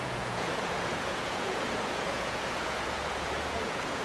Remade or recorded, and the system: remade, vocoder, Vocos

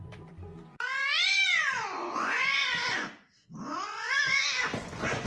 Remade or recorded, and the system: remade, vocoder, Vocos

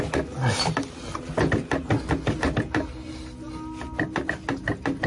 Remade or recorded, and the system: recorded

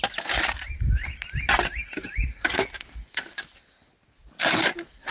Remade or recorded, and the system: recorded